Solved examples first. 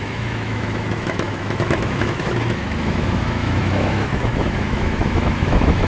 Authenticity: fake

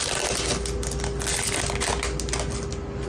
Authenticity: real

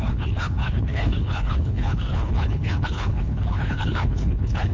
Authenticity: fake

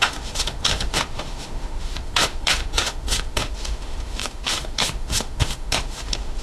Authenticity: fake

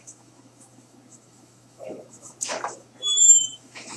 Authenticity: fake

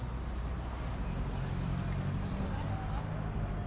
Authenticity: real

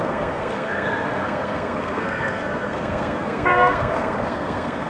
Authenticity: fake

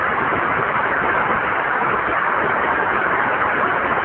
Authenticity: real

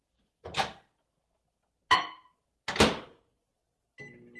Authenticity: real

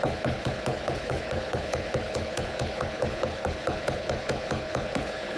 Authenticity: fake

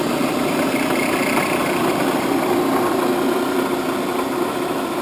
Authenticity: fake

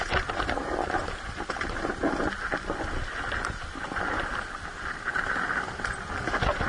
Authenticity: real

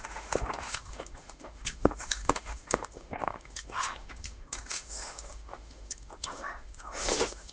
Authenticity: fake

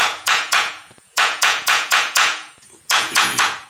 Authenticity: fake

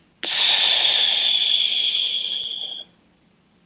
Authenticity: real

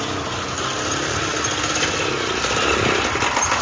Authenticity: real